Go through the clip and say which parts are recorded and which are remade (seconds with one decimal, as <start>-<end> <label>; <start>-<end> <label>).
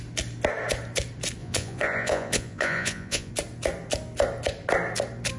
0.0-1.4 recorded; 1.4-3.3 remade; 3.3-5.4 recorded